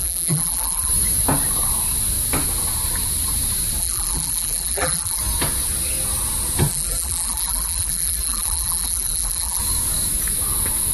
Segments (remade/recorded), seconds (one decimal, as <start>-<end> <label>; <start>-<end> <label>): 0.0-0.9 remade; 0.9-3.8 recorded; 3.8-5.2 remade; 5.2-6.7 recorded; 6.7-9.6 remade; 9.6-10.9 recorded

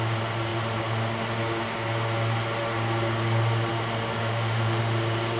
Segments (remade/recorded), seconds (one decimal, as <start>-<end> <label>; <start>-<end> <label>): 0.0-4.2 recorded; 4.2-4.8 remade; 4.8-5.4 recorded

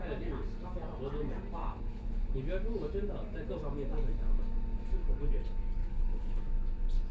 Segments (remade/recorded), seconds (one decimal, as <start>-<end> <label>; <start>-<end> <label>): 0.0-1.6 recorded; 1.6-2.3 remade; 2.3-5.8 recorded; 5.8-6.4 remade; 6.4-7.1 recorded

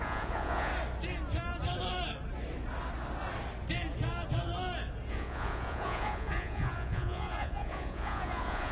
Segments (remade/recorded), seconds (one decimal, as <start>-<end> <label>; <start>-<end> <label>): 0.0-0.7 remade; 0.7-5.1 recorded; 5.1-8.7 remade